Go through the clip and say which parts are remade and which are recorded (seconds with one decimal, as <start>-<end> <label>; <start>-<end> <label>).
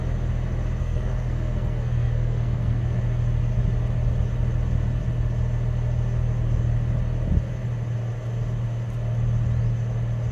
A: 0.0-0.8 recorded; 0.8-3.0 remade; 3.0-10.3 recorded